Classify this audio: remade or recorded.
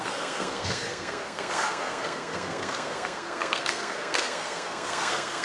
remade